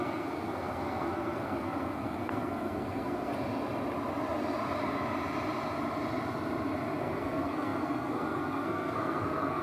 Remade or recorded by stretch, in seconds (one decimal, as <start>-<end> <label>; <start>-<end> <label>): 0.0-3.3 remade; 3.3-7.0 recorded; 7.0-9.6 remade